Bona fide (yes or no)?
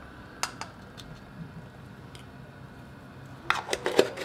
yes